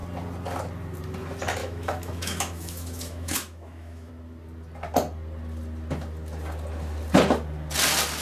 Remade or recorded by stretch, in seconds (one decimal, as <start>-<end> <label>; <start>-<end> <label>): 0.0-1.6 recorded; 1.6-4.1 remade; 4.1-8.2 recorded